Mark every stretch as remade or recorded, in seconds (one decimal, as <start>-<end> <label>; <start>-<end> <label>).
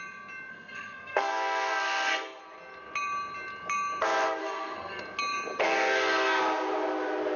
0.0-0.5 recorded; 0.5-2.4 remade; 2.4-4.4 recorded; 4.4-5.0 remade; 5.0-5.6 recorded; 5.6-6.4 remade; 6.4-7.4 recorded